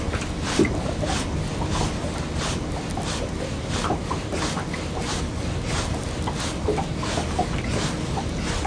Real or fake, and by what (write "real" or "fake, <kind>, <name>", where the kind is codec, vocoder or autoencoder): real